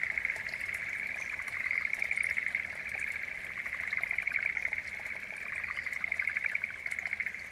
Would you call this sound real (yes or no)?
yes